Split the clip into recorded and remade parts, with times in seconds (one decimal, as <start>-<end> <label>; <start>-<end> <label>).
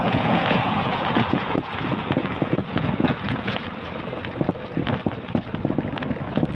0.0-3.7 remade; 3.7-6.5 recorded